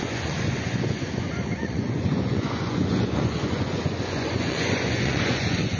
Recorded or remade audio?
remade